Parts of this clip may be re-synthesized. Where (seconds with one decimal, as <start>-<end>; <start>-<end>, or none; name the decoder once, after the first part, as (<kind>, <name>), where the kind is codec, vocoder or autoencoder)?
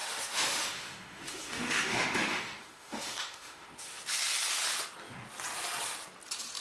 0.0-4.0 (autoencoder, DAC-VAE)